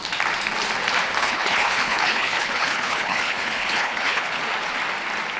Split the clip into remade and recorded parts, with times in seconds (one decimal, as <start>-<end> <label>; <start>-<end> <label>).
0.0-1.2 recorded; 1.2-4.4 remade; 4.4-5.4 recorded